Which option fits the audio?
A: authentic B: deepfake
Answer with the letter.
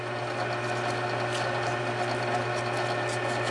A